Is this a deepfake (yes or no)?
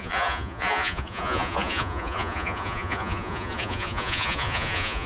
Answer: yes